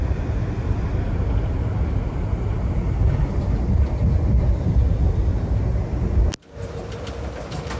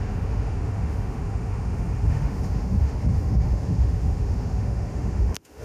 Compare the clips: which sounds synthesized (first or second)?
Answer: second